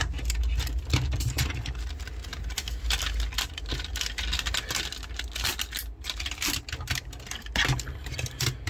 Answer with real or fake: real